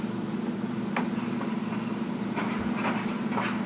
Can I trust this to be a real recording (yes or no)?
yes